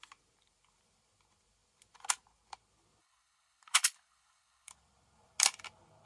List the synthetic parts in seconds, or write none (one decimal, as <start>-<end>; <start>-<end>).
3.0-4.7